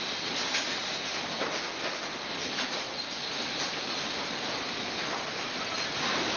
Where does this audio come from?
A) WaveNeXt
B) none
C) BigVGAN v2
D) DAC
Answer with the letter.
B